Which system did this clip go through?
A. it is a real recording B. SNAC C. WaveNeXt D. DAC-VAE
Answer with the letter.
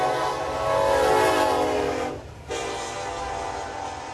A